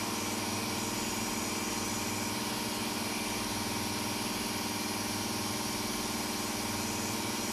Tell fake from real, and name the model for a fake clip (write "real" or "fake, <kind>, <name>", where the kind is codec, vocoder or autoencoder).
real